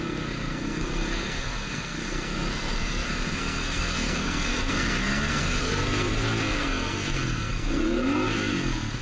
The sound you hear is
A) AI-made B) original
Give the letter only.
A